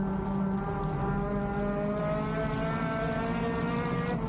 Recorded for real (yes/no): yes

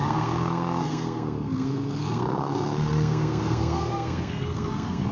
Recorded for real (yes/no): no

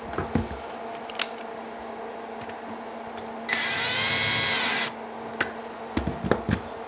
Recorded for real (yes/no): yes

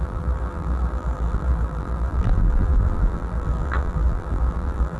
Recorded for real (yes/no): no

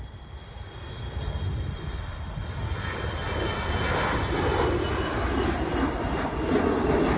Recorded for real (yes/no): yes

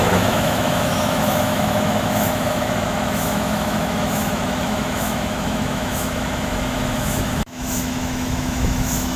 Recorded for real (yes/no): no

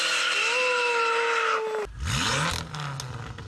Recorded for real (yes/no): yes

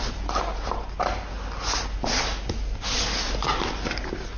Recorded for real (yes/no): yes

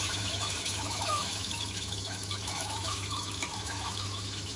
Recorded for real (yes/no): no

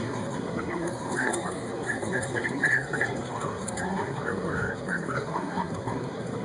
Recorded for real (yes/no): no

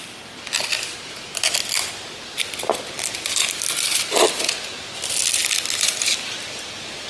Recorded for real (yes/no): yes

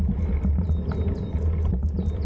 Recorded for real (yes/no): yes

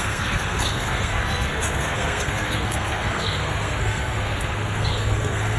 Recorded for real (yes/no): no